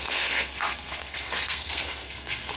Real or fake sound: fake